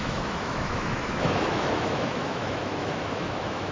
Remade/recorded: remade